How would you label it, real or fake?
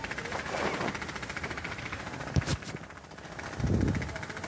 real